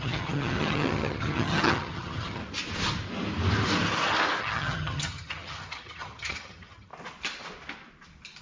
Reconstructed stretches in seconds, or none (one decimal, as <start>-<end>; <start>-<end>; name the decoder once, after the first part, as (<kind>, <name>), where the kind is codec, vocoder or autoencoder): 0.0-2.4 (vocoder, HiFi-GAN); 4.4-6.9